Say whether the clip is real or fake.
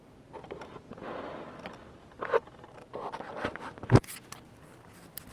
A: real